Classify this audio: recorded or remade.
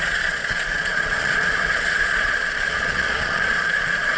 remade